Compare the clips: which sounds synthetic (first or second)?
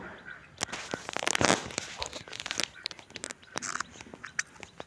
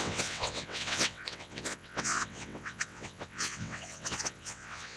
second